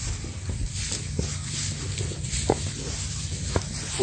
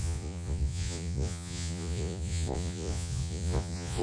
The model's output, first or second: second